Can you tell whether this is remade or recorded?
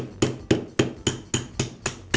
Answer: recorded